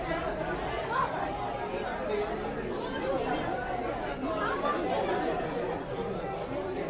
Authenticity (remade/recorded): recorded